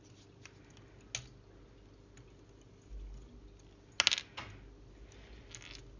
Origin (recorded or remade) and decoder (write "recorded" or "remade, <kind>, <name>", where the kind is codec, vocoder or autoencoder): recorded